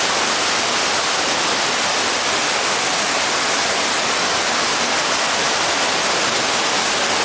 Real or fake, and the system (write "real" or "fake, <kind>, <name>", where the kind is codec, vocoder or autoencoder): real